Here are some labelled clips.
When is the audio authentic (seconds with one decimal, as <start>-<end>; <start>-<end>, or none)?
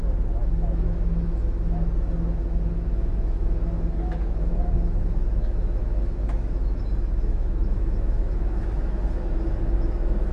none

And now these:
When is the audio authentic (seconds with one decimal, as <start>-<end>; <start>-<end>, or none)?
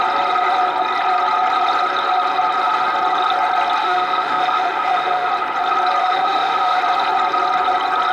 0.0-3.8; 5.3-6.0; 6.8-8.1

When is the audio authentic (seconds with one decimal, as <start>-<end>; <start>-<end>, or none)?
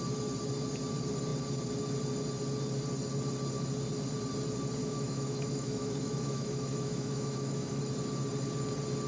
0.0-4.8; 7.8-9.1